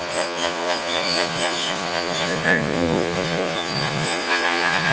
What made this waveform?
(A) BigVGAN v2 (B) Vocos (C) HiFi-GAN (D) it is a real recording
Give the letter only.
B